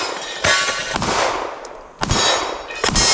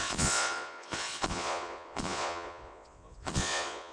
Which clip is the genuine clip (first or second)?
first